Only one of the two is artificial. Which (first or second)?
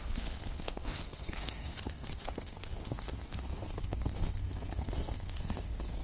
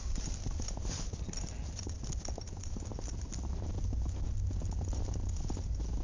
first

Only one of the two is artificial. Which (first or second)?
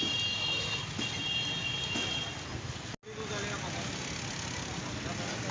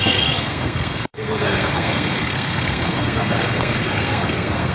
second